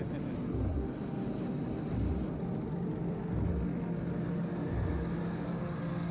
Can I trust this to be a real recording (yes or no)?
yes